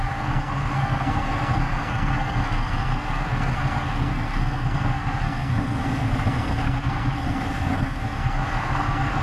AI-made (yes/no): yes